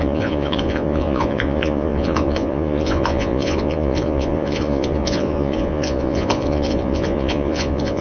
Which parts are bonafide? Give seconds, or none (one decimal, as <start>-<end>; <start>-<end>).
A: none